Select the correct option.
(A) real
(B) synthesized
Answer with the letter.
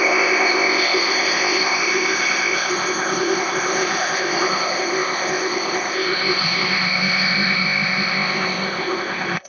B